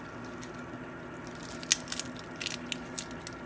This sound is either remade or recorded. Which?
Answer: recorded